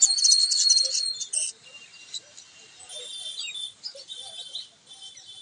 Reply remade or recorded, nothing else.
recorded